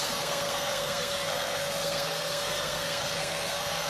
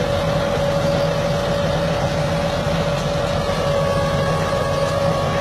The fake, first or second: first